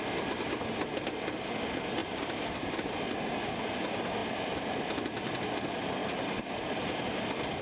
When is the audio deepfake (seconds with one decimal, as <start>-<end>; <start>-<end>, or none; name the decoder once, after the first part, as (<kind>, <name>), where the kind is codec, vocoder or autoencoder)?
2.0-2.9 (vocoder, BigVGAN v2); 6.0-7.1